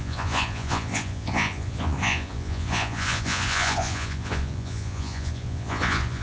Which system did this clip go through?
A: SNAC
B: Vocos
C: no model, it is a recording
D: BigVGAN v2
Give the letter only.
B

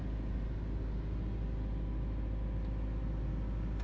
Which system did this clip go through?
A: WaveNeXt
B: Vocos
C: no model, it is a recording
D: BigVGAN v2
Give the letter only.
C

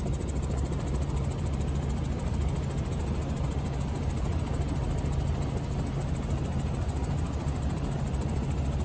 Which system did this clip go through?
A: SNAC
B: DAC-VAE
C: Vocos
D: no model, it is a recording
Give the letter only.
D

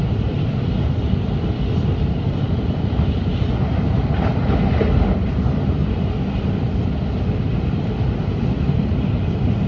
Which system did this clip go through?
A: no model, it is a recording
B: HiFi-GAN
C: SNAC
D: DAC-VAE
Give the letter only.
A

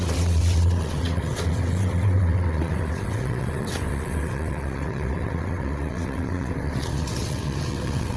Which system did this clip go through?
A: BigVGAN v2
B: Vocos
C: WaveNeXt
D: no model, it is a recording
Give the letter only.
C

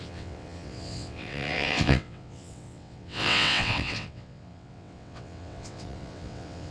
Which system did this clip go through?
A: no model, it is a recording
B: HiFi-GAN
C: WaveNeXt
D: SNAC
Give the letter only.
C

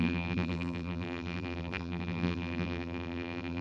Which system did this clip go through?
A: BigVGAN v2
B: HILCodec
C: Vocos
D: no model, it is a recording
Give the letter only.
A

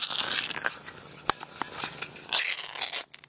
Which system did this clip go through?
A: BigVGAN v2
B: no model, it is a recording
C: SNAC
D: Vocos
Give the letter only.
B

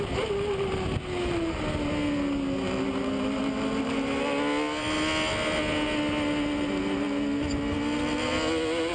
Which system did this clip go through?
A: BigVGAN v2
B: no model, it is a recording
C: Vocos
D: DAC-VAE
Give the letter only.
B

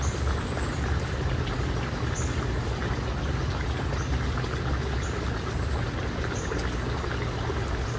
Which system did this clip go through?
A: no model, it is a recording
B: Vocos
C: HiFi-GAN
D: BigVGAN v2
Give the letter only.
A